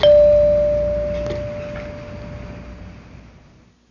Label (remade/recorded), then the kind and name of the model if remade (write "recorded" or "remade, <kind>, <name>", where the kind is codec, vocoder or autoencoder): recorded